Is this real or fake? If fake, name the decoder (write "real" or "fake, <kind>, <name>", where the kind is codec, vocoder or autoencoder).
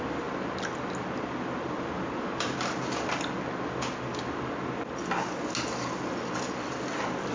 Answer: real